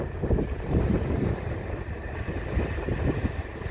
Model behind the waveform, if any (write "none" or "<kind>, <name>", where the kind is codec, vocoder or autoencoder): none